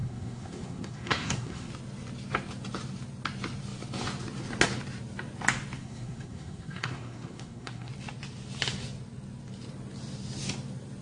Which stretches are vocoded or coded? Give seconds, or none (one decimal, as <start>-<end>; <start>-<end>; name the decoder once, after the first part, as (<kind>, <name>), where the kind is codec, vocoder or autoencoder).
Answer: 0.0-1.7 (codec, SNAC); 5.8-7.9